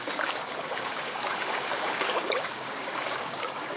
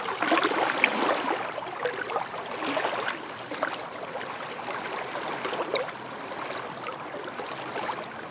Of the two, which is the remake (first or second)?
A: first